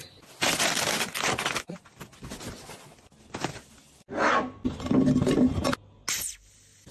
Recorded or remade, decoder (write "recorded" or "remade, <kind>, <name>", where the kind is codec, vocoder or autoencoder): recorded